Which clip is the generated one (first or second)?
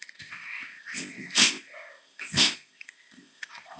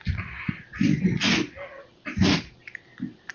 first